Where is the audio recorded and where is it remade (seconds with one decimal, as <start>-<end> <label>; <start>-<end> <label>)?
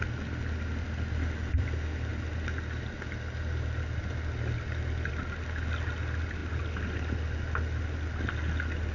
0.0-8.9 recorded